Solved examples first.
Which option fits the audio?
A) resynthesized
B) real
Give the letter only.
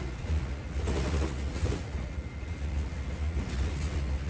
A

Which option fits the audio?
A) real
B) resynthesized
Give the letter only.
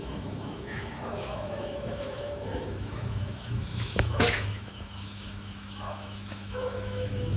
B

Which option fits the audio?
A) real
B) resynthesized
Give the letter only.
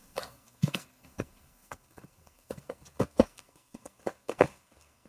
B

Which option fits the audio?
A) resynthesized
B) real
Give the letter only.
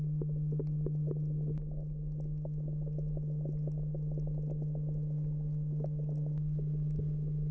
B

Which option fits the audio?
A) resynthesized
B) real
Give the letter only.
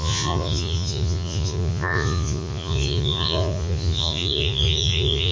A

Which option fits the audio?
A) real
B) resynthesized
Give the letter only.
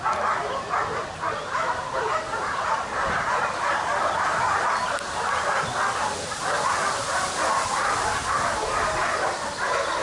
A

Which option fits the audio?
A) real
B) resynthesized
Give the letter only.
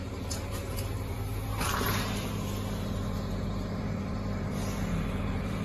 B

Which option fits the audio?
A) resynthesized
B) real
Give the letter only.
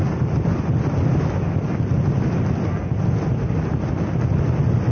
B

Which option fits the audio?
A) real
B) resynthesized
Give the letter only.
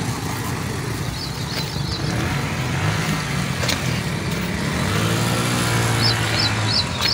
A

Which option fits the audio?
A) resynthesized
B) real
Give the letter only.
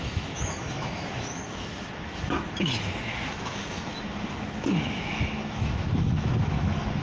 A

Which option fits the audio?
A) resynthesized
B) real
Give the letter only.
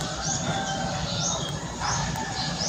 B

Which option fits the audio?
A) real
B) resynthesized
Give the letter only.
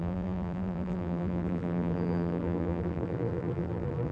B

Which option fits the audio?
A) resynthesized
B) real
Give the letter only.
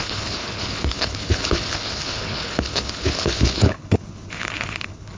A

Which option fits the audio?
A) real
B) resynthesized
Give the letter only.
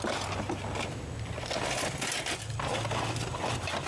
A